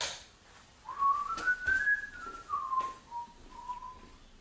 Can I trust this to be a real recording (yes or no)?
yes